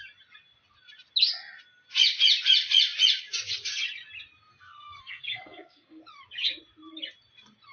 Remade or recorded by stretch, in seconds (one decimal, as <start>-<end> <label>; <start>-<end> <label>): 0.0-4.5 recorded; 4.5-6.0 remade; 6.0-7.7 recorded